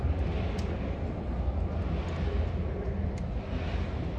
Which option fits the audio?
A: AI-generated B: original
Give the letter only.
B